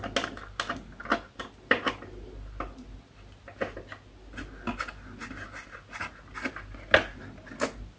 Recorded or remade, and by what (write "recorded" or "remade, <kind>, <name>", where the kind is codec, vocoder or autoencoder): recorded